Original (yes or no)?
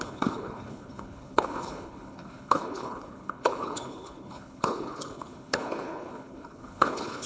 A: no